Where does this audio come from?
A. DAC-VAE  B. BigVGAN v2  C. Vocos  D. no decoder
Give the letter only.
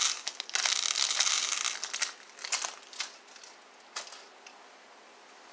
D